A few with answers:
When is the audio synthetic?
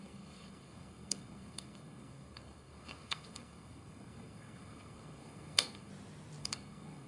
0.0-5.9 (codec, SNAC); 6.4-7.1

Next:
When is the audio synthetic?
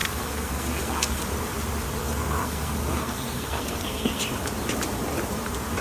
0.0-1.2 (codec, SNAC); 2.0-4.2